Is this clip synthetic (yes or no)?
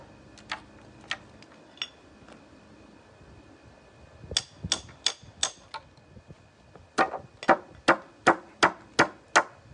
no